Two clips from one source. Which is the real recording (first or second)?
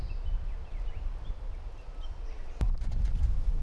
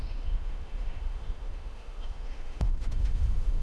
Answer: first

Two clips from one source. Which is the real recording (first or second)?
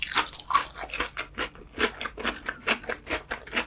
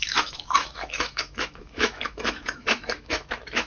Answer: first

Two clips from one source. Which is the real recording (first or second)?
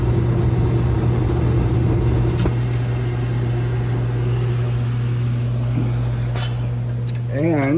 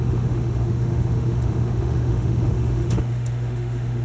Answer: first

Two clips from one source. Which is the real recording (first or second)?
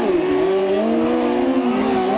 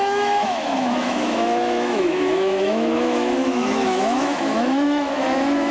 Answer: first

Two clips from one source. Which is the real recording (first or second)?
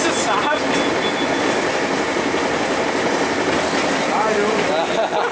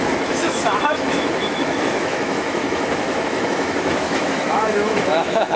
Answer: first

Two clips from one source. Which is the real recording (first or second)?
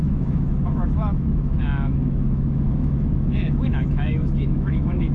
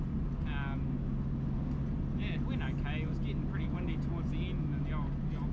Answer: second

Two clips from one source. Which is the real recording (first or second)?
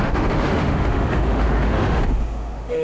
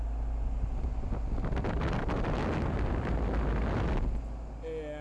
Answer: second